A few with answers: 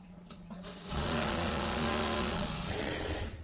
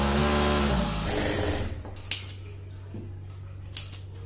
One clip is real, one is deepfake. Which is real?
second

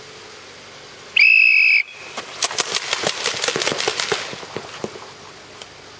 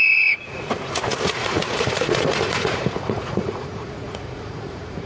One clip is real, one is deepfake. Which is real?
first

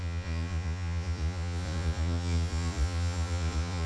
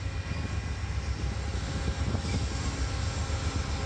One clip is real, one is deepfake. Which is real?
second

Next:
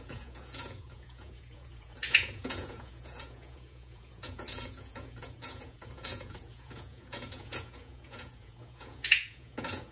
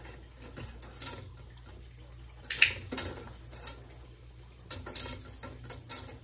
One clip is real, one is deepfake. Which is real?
second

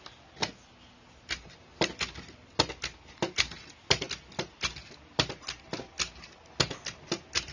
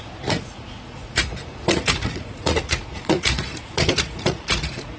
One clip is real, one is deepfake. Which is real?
first